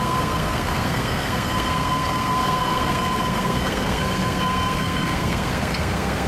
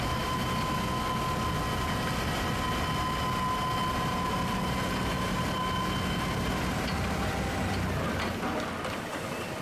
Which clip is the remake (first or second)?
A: first